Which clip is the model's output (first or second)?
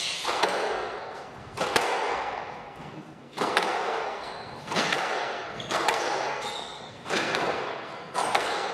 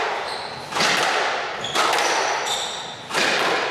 first